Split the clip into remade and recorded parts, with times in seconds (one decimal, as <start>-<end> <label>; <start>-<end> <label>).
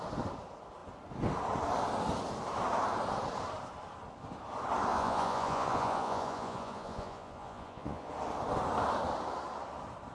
0.0-4.9 recorded; 4.9-8.1 remade; 8.1-10.1 recorded